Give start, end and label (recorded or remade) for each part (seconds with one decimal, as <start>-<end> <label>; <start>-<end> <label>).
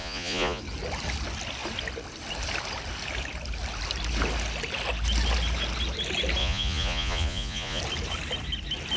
0.0-0.6 remade; 0.6-6.4 recorded; 6.4-7.8 remade; 7.8-9.0 recorded